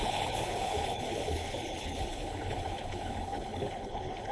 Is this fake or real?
fake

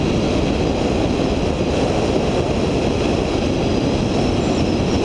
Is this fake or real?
real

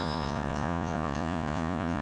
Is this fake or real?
fake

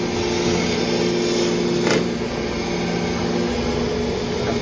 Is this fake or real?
real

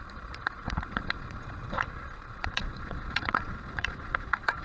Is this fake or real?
fake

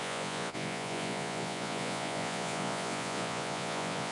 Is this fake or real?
fake